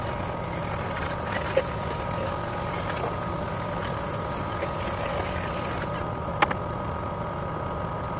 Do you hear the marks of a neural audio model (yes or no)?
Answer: no